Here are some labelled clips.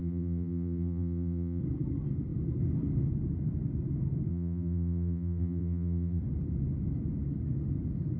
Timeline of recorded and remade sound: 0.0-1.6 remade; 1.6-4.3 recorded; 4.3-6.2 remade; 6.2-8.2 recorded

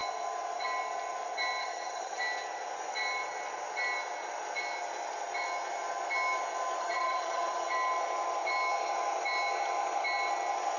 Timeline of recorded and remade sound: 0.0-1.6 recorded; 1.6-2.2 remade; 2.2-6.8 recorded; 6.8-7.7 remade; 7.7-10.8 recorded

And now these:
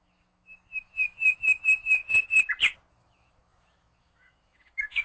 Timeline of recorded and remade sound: 0.0-2.0 remade; 2.0-2.9 recorded; 2.9-5.0 remade